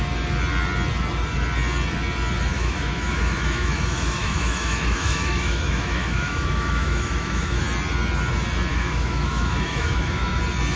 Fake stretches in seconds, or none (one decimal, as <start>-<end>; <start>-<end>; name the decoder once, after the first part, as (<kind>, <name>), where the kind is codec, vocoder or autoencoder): 2.5-7.6 (autoencoder, DAC-VAE); 8.7-10.4